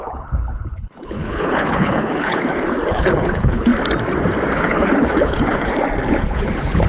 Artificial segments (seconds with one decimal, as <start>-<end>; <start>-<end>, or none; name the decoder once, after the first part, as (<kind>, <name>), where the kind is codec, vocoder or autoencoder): 0.0-2.4 (codec, HILCodec); 2.9-3.7; 4.5-5.7; 6.2-6.9